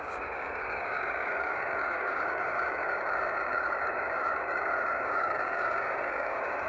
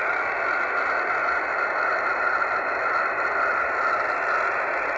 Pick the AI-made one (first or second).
first